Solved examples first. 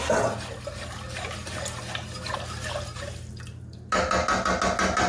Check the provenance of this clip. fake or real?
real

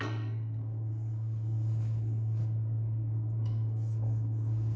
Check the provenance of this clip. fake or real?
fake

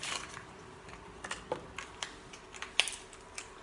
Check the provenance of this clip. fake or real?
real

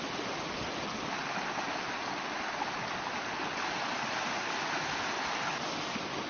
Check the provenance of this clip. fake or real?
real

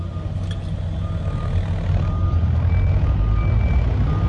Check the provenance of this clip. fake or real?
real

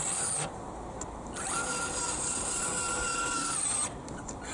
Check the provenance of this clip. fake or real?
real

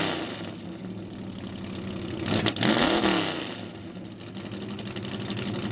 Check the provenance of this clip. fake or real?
real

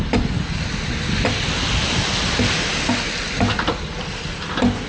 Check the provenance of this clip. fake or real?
real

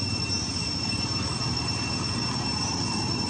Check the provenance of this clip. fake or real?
real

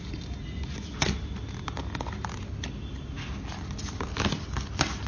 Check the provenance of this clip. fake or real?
real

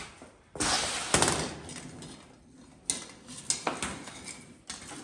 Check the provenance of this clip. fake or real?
real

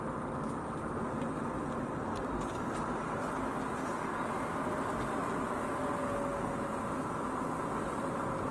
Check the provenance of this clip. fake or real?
real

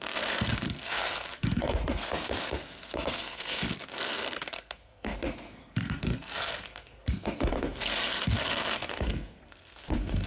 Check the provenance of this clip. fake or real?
fake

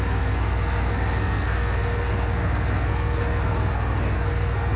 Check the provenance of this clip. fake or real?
fake